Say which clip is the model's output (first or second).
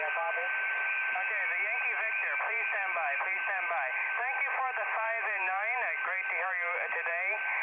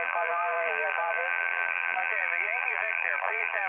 second